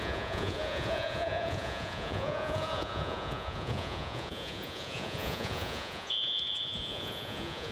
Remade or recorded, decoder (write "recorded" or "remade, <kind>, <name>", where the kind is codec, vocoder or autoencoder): remade, vocoder, Vocos